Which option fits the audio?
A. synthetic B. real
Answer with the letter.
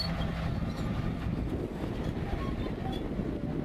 B